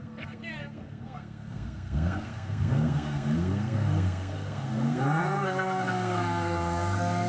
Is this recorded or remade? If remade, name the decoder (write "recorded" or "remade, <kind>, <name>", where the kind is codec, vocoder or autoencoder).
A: remade, codec, SNAC